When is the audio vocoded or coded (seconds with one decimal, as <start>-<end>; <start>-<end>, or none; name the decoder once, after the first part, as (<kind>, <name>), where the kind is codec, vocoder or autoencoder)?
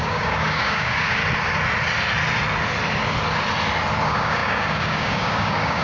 0.0-1.2 (codec, DAC); 4.0-5.8